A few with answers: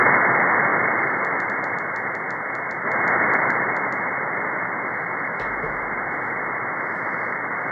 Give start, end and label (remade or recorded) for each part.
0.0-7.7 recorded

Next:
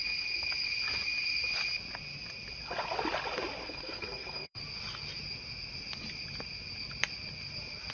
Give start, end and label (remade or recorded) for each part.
0.0-3.6 recorded; 3.6-4.6 remade; 4.6-7.9 recorded

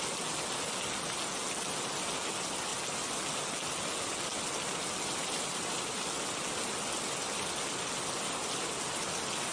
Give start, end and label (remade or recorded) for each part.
0.0-5.2 recorded; 5.2-6.1 remade; 6.1-9.5 recorded

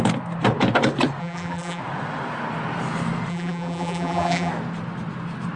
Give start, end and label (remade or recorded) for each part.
0.0-1.2 recorded; 1.2-1.8 remade; 1.8-3.3 recorded; 3.3-4.5 remade; 4.5-5.6 recorded

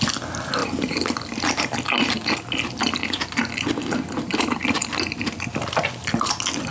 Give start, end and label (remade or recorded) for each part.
0.0-6.7 recorded

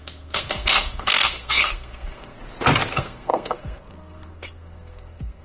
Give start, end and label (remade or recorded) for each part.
0.0-2.4 remade; 2.4-2.9 recorded; 2.9-5.4 remade

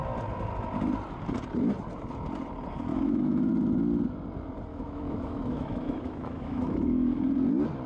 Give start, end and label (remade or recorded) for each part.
0.0-2.9 recorded; 2.9-3.5 remade; 3.5-4.7 recorded; 4.7-7.2 remade; 7.2-7.9 recorded